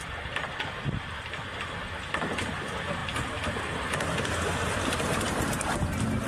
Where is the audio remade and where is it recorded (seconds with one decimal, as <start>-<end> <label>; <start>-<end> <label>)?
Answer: 0.0-6.3 recorded